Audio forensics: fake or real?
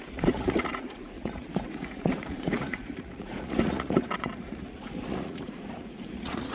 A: fake